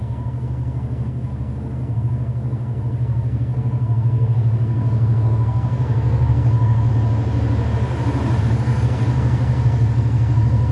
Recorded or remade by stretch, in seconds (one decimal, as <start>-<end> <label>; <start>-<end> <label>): 0.0-6.9 remade; 6.9-8.4 recorded; 8.4-10.7 remade